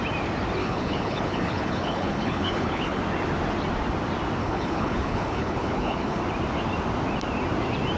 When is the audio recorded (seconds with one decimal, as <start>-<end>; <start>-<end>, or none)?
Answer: 0.0-0.6; 3.0-4.4; 6.2-8.0